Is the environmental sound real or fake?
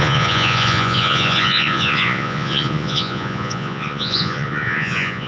fake